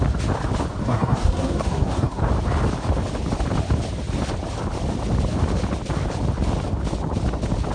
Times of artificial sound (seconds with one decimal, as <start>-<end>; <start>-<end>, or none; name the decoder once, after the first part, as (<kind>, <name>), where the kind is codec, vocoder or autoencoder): 0.8-2.2 (codec, SNAC)